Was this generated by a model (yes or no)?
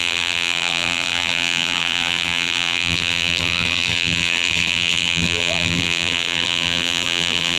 yes